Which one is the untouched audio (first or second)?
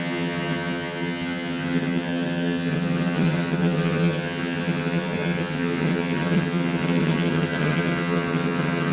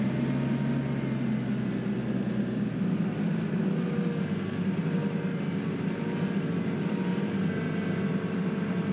second